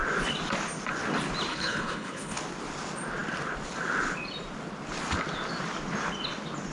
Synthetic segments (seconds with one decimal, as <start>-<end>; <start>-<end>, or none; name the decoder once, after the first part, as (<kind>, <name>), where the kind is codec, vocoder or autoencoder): 1.5-2.4 (codec, HILCodec)